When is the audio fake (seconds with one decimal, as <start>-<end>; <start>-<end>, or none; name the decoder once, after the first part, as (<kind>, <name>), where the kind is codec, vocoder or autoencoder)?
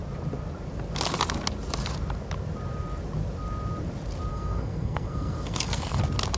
4.3-6.0 (codec, SNAC)